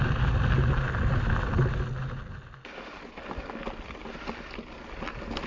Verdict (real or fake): real